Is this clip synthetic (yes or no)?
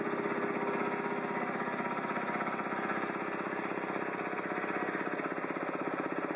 no